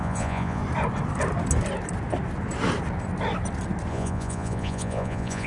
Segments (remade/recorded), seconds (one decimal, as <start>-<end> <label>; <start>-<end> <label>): 0.0-0.6 remade; 0.6-3.9 recorded; 3.9-5.5 remade